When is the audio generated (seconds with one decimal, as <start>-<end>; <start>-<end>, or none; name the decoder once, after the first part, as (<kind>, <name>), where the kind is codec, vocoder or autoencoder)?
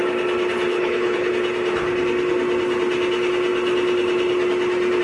0.7-1.3 (codec, HILCodec)